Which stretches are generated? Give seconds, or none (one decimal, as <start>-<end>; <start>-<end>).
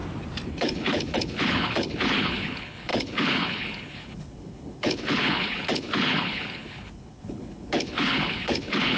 0.5-9.0